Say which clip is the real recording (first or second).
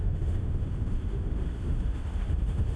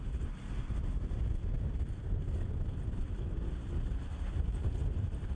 second